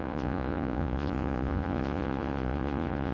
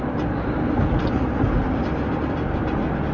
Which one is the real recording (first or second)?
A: second